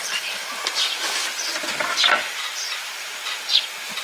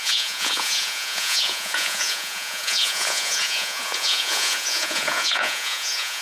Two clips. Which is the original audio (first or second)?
first